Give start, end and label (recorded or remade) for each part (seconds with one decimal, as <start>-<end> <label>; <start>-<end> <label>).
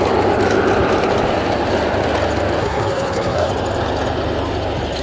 0.0-2.6 recorded; 2.6-3.5 remade; 3.5-5.0 recorded